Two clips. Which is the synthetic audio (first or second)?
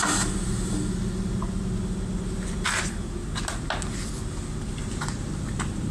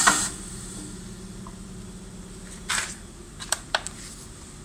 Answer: second